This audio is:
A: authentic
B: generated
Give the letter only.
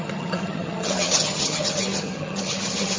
B